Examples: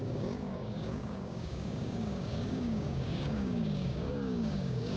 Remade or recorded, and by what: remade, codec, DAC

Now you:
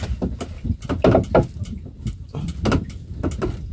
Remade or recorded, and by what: recorded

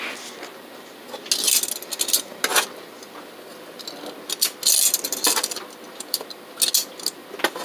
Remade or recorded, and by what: recorded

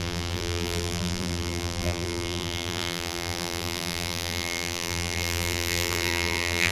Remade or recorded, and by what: remade, vocoder, BigVGAN v2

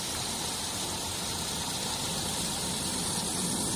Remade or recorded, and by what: recorded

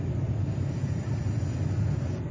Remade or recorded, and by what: recorded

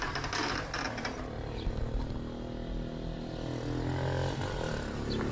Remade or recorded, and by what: recorded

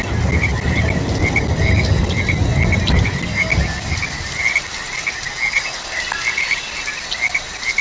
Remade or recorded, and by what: recorded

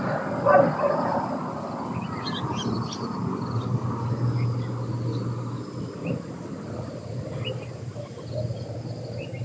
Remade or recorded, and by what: recorded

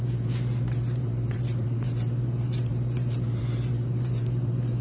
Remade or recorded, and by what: remade, vocoder, BigVGAN v2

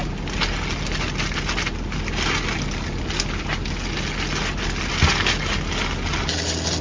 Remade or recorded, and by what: recorded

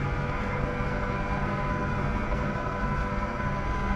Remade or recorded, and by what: remade, codec, SNAC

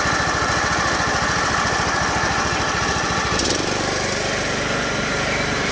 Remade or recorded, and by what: remade, vocoder, BigVGAN v2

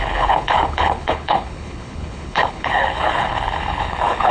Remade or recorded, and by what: remade, codec, HILCodec